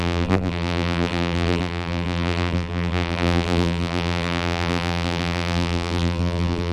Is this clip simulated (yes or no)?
yes